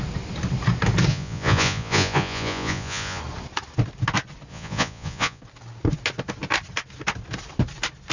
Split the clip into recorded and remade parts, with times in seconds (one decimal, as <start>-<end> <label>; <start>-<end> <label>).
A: 0.0-1.1 recorded; 1.1-3.2 remade; 3.2-4.5 recorded; 4.5-5.4 remade; 5.4-8.1 recorded